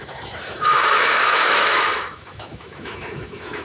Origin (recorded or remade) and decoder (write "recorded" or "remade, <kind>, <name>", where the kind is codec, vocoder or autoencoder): remade, autoencoder, DAC-VAE